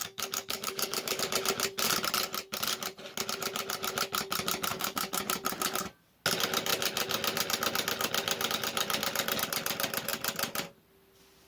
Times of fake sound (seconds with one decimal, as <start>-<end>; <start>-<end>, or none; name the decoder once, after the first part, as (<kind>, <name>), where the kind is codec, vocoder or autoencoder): 0.0-1.2 (codec, DAC); 4.7-5.2